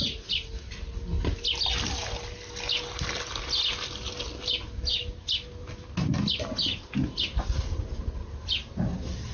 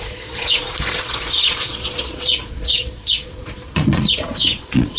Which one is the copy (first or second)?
second